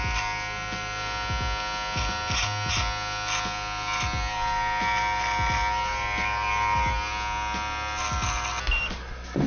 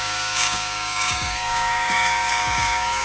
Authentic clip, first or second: first